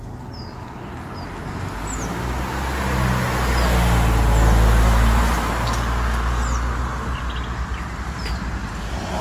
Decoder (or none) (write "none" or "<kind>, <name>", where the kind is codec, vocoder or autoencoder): none